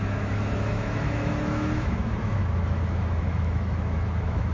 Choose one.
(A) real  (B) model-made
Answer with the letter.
B